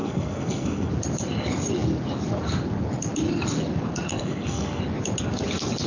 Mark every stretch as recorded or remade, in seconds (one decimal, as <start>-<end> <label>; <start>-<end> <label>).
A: 0.0-0.9 remade; 0.9-4.1 recorded; 4.1-4.8 remade; 4.8-5.9 recorded